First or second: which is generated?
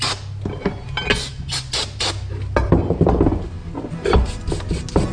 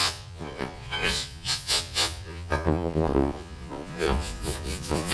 second